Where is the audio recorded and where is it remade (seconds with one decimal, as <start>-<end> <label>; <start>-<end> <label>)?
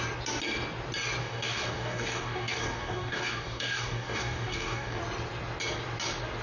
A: 0.0-1.2 recorded; 1.2-5.0 remade; 5.0-6.4 recorded